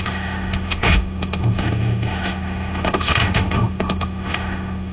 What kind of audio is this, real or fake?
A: fake